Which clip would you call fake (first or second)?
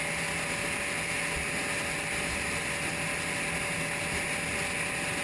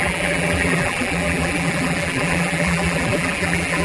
second